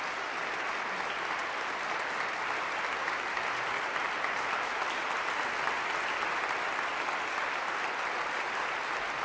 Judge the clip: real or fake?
real